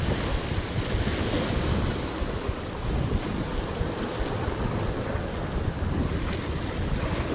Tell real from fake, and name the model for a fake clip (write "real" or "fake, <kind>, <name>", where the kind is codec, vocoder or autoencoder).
real